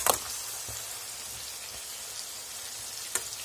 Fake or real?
real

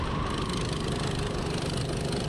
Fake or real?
fake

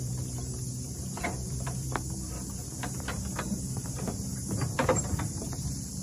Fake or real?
fake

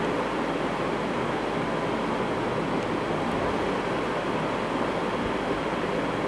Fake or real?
real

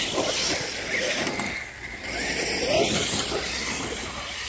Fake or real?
real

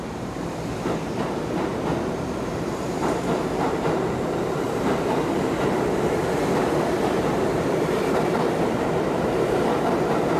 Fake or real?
fake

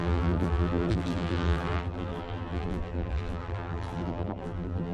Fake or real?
fake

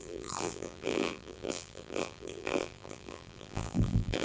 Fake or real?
fake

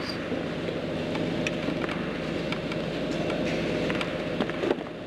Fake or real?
real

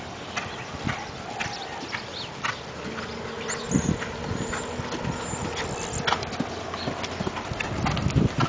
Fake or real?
real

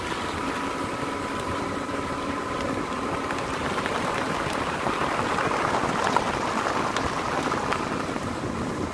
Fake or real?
real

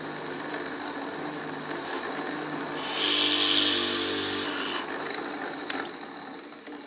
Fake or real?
real